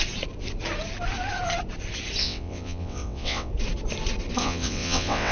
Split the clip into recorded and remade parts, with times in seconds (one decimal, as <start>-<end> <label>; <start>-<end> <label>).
0.0-2.2 recorded; 2.2-3.5 remade; 3.5-4.4 recorded; 4.4-5.3 remade